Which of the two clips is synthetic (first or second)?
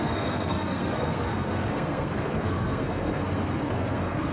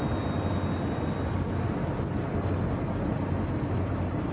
first